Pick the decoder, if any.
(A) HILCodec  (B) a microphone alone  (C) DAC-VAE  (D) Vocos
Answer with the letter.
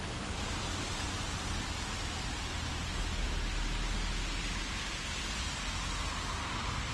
B